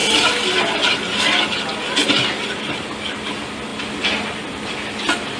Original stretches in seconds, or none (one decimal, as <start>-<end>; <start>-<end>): 0.0-5.4